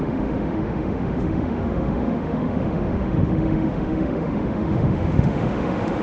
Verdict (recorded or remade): remade